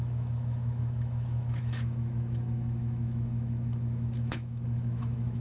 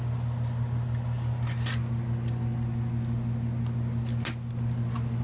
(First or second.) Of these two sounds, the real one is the second